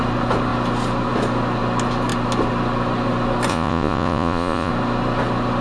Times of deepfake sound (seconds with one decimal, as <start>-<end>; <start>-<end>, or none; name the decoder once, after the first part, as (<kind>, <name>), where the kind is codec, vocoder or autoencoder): 3.5-4.7 (vocoder, Vocos)